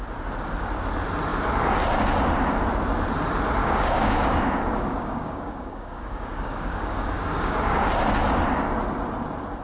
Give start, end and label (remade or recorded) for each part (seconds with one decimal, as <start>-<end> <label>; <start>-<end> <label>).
0.0-3.6 recorded; 3.6-7.9 remade; 7.9-9.6 recorded